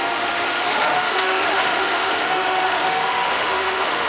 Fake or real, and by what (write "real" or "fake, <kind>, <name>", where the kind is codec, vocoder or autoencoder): fake, autoencoder, DAC-VAE